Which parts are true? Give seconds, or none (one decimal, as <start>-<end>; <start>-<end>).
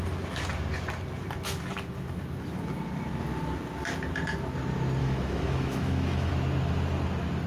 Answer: 0.0-5.0; 6.3-7.5